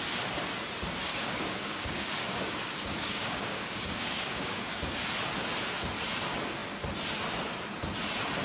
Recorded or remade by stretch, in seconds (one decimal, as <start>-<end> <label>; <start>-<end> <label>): 0.0-1.1 recorded; 1.1-4.8 remade; 4.8-8.4 recorded

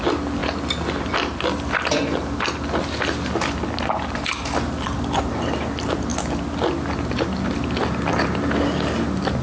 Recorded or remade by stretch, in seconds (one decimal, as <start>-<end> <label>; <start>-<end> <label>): 0.0-9.4 recorded